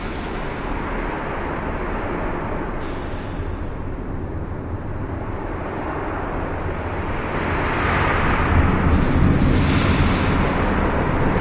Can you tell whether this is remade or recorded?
recorded